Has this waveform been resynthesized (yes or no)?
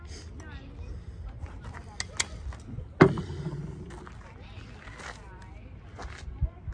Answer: no